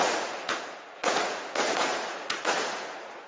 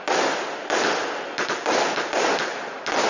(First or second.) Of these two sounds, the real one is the second